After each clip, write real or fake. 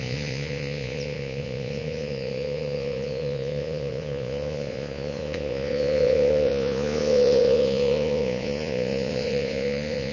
fake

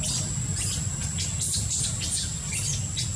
real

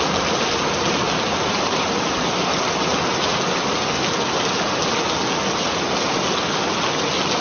real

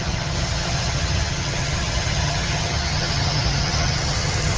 fake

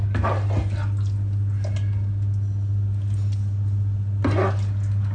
real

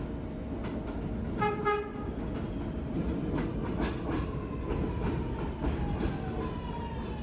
real